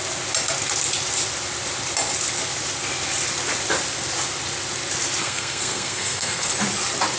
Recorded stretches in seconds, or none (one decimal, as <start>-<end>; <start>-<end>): 0.0-5.2; 6.5-7.2